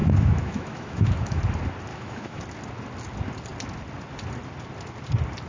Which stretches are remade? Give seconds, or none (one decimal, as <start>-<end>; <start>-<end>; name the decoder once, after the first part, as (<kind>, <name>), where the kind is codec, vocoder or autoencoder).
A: 0.0-1.4 (autoencoder, DAC-VAE); 1.9-2.4